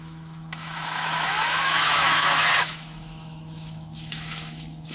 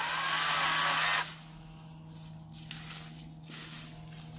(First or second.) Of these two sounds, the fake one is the first